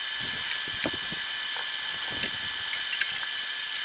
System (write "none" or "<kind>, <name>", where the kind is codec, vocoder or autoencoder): none